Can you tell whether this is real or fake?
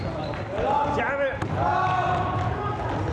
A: real